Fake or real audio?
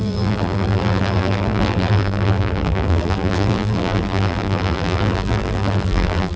fake